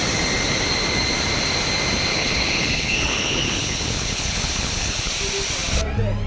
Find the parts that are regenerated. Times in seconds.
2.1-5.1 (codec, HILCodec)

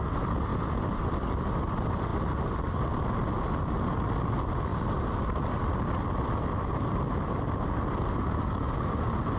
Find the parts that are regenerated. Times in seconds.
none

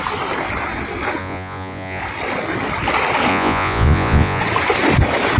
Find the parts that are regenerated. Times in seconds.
1.2-2.0 (vocoder, Vocos); 3.3-4.4